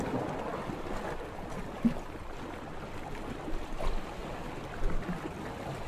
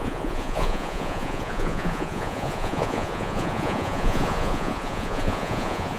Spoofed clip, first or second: second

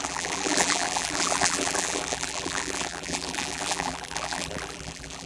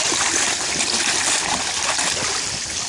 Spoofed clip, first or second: first